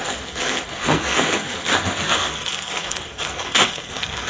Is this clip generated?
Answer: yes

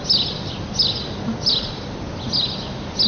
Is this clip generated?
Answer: no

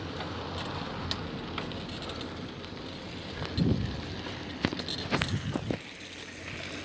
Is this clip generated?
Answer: no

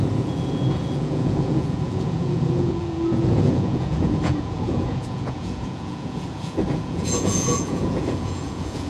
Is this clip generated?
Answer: yes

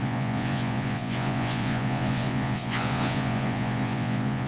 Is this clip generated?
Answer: yes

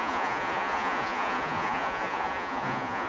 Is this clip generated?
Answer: yes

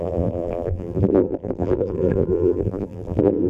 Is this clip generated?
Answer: yes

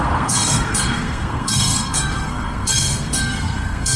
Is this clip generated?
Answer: yes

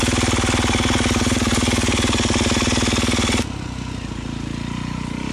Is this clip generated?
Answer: no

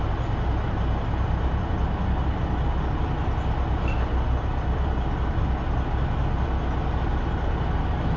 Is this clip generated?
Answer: no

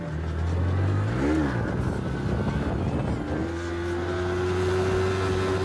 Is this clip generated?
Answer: no